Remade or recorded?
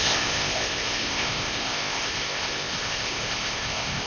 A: remade